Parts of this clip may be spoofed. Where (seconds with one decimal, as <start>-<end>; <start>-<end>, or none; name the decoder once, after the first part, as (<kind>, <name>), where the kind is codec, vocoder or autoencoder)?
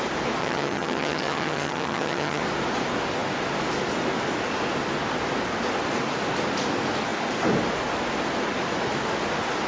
0.4-2.4 (vocoder, HiFi-GAN)